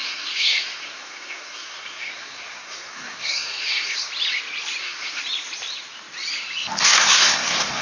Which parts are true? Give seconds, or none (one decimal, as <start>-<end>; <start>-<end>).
4.1-4.8; 5.2-6.8